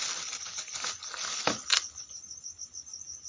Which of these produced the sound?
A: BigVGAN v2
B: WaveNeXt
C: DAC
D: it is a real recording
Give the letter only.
D